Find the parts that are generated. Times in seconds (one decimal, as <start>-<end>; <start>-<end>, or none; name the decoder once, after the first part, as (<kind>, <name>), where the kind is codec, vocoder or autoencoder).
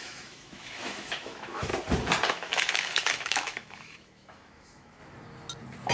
0.0-1.7 (autoencoder, DAC-VAE); 2.3-5.0